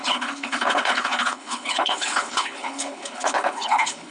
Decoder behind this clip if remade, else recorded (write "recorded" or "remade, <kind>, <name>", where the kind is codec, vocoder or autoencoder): remade, codec, HILCodec